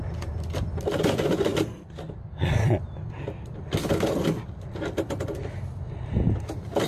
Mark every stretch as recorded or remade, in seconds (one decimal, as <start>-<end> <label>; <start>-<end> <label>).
0.0-6.9 recorded